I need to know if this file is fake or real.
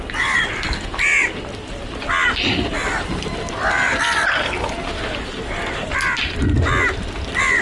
real